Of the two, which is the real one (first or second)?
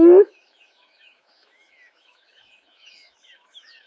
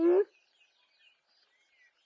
second